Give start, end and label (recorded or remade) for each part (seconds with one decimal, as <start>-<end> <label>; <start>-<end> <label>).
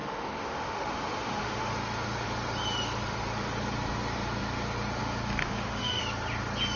0.0-1.7 remade; 1.7-5.4 recorded; 5.4-6.0 remade; 6.0-6.8 recorded